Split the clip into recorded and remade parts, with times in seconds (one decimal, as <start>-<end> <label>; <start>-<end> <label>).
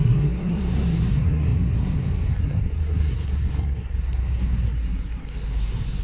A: 0.0-6.0 remade